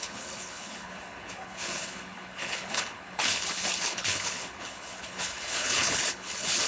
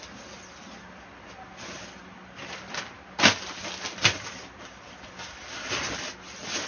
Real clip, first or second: second